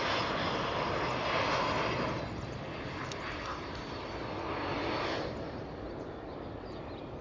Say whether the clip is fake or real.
real